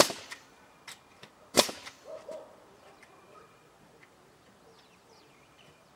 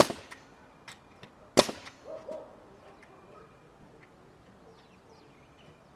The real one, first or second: second